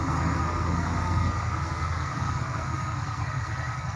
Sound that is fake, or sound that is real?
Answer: fake